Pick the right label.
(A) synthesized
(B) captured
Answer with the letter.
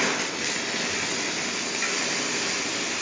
B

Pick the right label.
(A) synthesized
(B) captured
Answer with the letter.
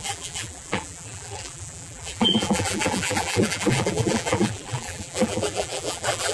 A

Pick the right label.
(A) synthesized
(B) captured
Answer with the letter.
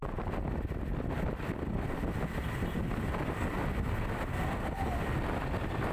B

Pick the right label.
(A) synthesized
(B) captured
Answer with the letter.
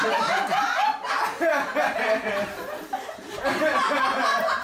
A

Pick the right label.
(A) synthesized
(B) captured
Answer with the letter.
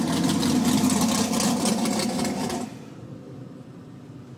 A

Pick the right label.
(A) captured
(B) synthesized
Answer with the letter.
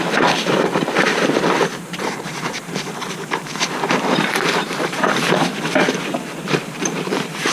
B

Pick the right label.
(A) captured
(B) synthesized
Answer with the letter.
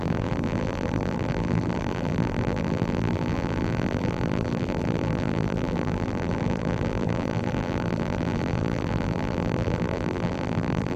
B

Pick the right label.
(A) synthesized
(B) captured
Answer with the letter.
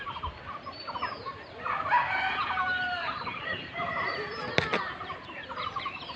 A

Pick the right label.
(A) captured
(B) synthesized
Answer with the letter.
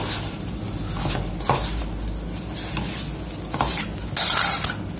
A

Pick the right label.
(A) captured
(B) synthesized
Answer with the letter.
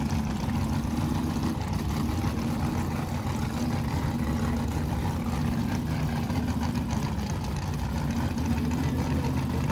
A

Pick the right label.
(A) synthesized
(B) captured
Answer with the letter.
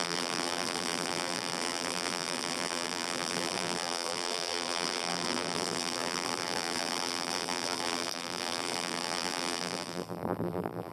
A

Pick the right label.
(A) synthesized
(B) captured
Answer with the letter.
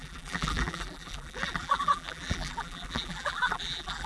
A